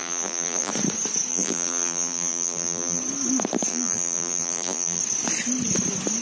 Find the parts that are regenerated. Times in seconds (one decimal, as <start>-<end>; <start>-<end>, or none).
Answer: 0.0-0.7; 1.3-3.0; 3.7-5.0